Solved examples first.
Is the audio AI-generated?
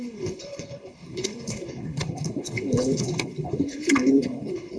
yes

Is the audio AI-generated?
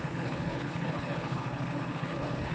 yes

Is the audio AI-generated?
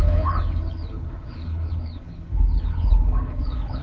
yes